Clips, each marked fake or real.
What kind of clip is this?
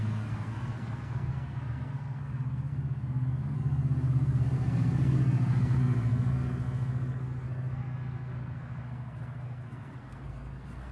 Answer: fake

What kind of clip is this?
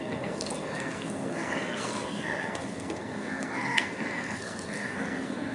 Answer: fake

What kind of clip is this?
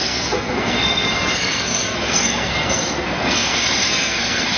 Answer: fake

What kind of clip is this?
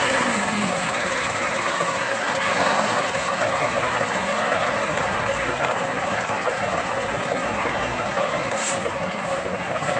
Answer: fake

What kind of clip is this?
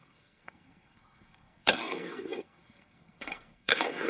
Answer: fake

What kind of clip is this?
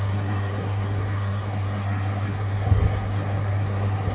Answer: fake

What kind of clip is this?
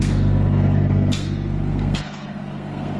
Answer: fake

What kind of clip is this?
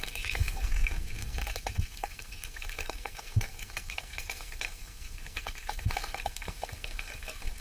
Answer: fake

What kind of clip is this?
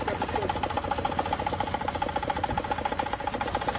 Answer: real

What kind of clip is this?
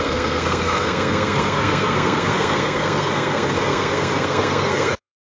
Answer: fake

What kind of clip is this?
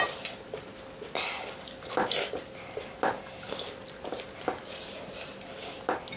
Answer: real